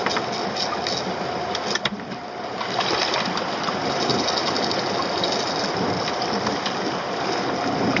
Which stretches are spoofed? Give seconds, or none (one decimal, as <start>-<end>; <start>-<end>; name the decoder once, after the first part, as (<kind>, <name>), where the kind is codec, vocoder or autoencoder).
none